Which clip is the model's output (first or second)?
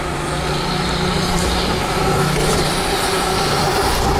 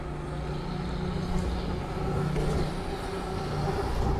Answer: first